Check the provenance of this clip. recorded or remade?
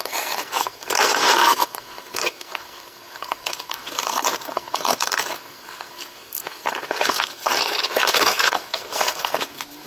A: remade